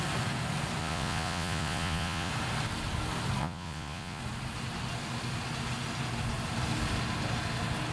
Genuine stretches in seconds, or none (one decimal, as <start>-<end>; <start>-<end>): 0.0-0.8; 2.3-3.4; 4.2-7.9

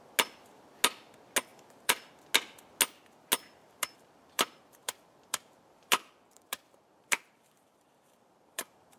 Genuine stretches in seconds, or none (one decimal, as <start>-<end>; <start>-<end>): 0.0-1.5; 2.1-3.6

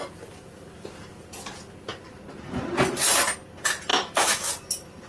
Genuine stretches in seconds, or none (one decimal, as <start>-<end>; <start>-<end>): 0.0-3.9; 4.5-5.1

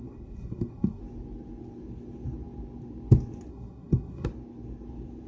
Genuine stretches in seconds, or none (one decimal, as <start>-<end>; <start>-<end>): 1.0-3.5; 4.3-5.3

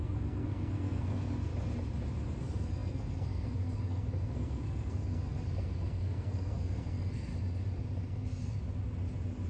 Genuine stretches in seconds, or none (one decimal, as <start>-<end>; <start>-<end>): 1.5-2.4; 7.3-8.0; 8.6-9.5

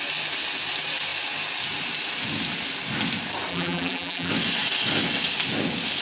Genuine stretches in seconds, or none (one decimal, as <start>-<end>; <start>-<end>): 0.0-3.5; 4.3-6.0

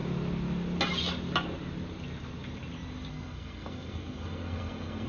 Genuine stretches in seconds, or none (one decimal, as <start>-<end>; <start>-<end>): 0.0-3.1

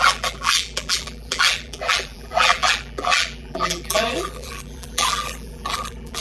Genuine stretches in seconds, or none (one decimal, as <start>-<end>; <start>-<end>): none